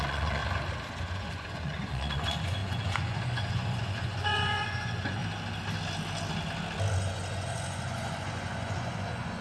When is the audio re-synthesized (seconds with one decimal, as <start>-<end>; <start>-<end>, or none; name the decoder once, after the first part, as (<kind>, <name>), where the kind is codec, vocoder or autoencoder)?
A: 0.0-0.4 (vocoder, Vocos); 1.1-5.2; 6.9-9.4